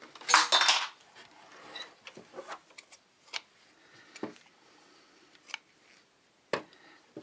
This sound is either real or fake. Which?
real